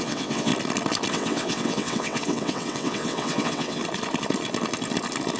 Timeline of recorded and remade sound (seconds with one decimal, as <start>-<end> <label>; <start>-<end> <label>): 0.0-0.5 remade; 0.5-1.1 recorded; 1.1-3.8 remade; 3.8-5.4 recorded